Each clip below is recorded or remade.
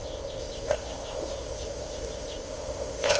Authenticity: remade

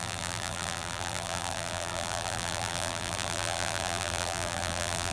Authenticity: remade